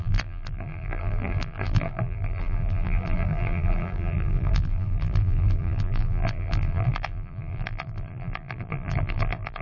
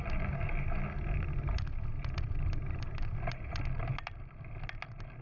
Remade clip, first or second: first